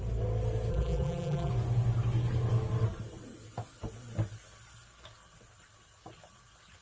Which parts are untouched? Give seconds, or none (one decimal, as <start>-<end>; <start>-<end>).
0.0-0.7; 1.5-6.8